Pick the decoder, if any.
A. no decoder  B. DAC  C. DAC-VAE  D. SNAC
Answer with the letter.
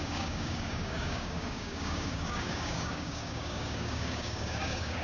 B